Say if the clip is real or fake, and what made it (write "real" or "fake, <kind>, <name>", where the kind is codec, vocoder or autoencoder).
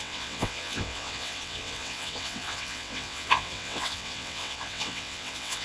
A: fake, vocoder, WaveNeXt